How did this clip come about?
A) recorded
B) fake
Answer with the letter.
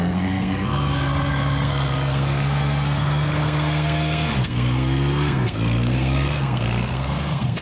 B